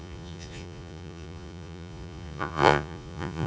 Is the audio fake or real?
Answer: fake